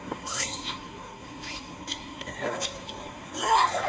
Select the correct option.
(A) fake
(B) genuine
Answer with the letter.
A